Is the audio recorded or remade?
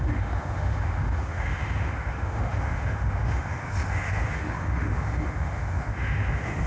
remade